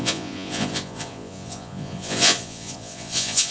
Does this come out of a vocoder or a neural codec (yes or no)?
yes